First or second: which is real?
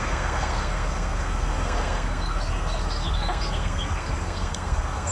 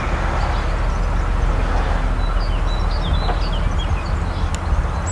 second